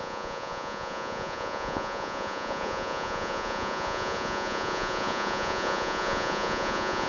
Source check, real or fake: fake